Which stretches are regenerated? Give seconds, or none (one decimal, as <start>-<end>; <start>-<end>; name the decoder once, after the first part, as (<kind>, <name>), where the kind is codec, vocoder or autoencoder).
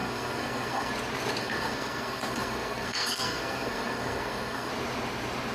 0.0-0.9 (codec, SNAC); 1.4-4.7